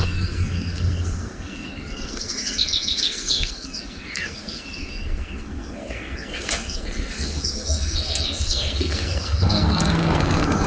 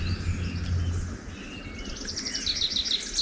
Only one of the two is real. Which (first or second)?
second